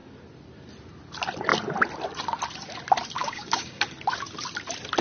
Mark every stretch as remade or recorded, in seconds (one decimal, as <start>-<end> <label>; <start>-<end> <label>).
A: 0.0-3.2 recorded; 3.2-3.8 remade; 3.8-5.0 recorded